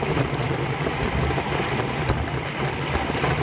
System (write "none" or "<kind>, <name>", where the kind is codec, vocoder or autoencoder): none